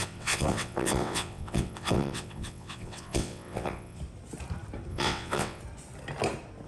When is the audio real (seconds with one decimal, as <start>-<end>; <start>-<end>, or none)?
4.0-4.9; 5.6-6.7